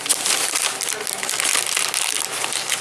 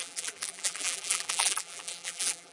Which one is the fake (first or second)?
second